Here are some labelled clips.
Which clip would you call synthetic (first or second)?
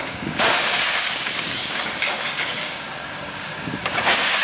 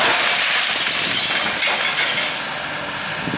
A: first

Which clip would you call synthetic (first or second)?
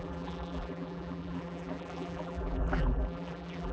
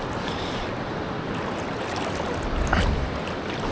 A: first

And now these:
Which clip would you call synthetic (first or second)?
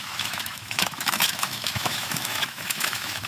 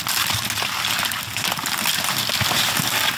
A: first